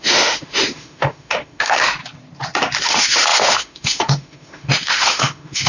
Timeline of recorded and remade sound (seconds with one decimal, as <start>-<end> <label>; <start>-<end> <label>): 0.0-2.0 remade; 2.0-2.8 recorded; 2.8-5.7 remade